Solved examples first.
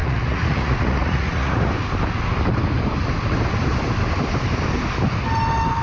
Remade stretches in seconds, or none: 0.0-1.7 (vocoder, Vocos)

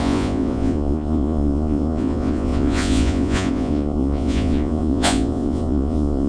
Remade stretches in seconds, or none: 0.0-6.3 (vocoder, Vocos)

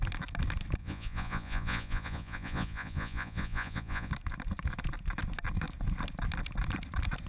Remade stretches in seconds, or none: 0.8-4.1 (vocoder, Vocos)

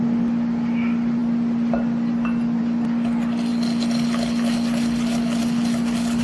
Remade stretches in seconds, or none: none

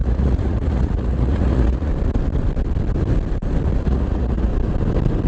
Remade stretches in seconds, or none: 0.0-1.9 (vocoder, Vocos); 3.8-4.5

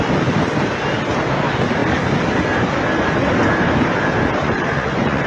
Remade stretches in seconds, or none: 4.4-5.3 (vocoder, Vocos)